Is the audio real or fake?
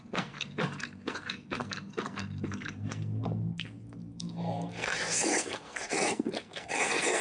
fake